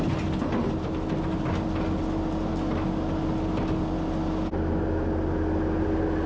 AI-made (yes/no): no